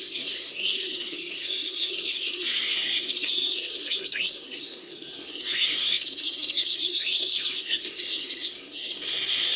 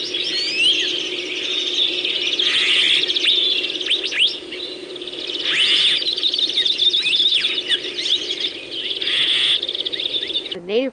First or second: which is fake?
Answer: first